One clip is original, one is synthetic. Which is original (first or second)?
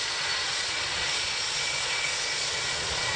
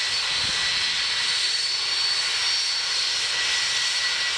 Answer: second